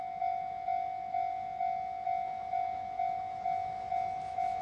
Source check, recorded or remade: remade